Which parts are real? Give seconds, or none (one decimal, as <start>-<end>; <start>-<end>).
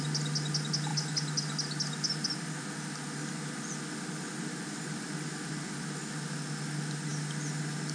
0.0-7.9